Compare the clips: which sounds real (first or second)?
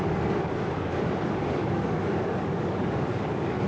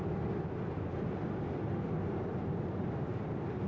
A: second